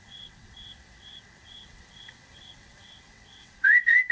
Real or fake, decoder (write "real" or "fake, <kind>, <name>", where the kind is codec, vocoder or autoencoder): fake, vocoder, WaveNeXt